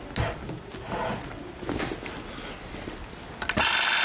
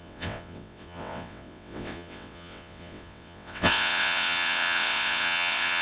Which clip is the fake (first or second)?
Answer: second